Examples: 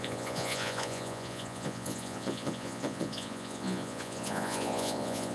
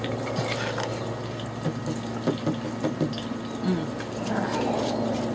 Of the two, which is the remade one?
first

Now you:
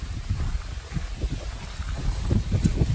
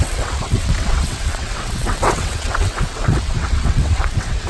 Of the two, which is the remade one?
second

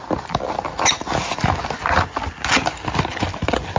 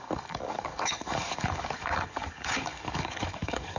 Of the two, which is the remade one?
second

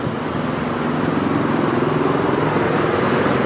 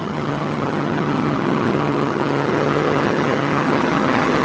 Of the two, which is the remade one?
second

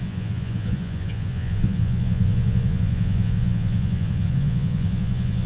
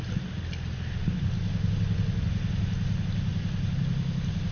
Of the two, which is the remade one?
first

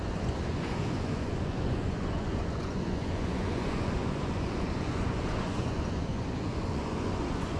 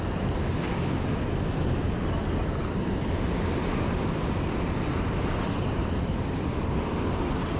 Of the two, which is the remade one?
first